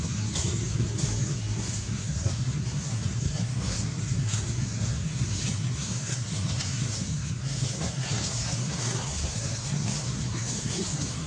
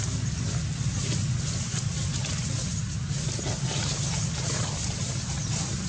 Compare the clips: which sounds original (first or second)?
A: second